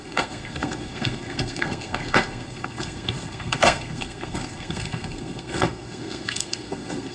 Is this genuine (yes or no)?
no